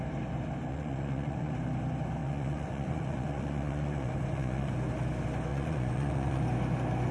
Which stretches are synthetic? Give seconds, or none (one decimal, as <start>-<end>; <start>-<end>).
0.7-1.5; 2.2-4.7; 5.5-6.4